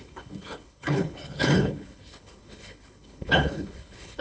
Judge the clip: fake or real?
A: fake